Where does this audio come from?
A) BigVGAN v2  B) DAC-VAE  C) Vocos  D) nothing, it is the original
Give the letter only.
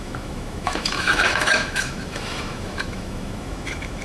B